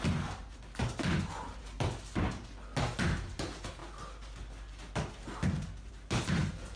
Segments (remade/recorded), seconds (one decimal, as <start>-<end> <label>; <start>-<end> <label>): 0.0-6.8 recorded